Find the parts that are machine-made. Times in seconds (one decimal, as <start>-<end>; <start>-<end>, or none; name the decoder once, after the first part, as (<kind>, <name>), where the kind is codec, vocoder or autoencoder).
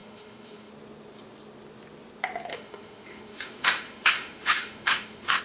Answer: 0.0-0.7 (autoencoder, DAC-VAE); 2.5-5.4